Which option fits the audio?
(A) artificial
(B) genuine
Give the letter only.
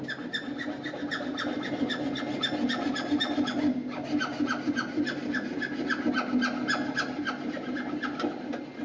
B